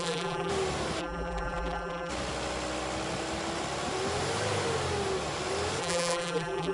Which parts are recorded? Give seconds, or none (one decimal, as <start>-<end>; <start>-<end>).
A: 0.5-1.0; 2.1-5.8